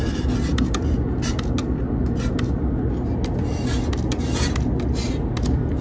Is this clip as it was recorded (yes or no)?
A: yes